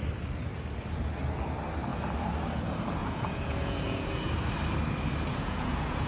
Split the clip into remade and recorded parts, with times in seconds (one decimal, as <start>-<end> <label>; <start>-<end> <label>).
0.0-3.0 recorded; 3.0-4.3 remade; 4.3-5.3 recorded; 5.3-6.1 remade